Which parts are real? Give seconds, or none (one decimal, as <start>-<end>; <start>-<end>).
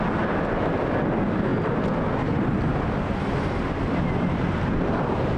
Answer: 0.0-5.4